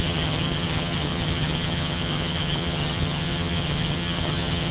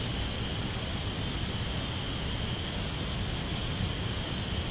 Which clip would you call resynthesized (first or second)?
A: first